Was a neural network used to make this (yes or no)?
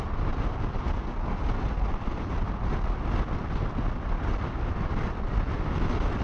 no